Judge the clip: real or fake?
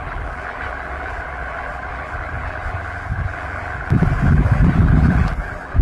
fake